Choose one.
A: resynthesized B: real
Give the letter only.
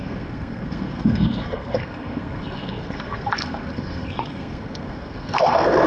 A